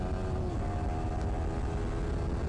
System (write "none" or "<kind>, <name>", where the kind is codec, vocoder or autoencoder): none